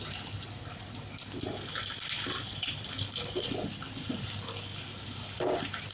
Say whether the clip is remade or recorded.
recorded